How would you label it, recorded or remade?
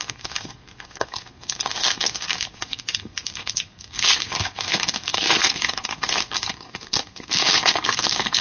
remade